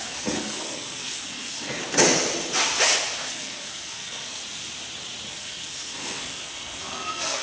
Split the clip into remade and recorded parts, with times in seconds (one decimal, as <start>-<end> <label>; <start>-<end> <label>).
0.0-1.8 remade; 1.8-3.3 recorded; 3.3-4.4 remade; 4.4-5.3 recorded; 5.3-7.4 remade